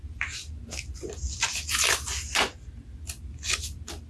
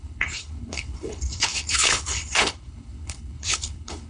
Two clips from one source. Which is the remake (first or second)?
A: second